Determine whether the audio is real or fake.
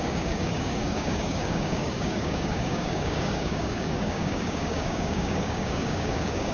fake